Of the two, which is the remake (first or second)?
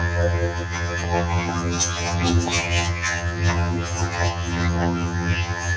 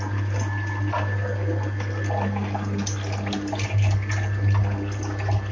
first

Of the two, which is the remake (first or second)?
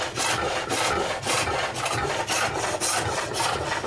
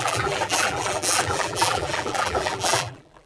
second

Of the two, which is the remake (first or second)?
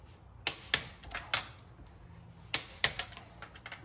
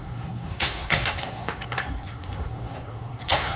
second